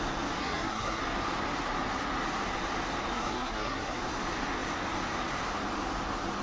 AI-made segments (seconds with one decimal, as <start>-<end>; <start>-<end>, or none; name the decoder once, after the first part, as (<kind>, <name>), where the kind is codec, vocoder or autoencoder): 0.4-1.0 (codec, SNAC); 3.1-4.0